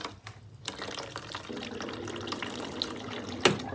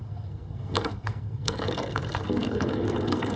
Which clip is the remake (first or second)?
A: second